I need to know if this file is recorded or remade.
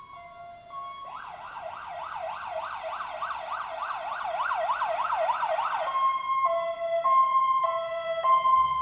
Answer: recorded